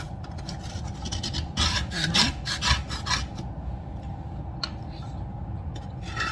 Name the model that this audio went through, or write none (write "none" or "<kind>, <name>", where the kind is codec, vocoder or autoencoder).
none